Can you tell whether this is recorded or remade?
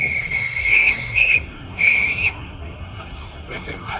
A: remade